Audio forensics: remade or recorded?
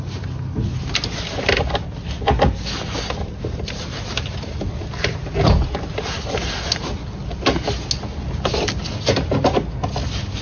recorded